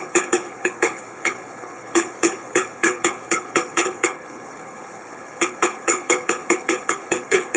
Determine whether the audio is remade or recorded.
remade